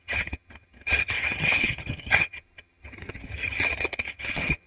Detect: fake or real fake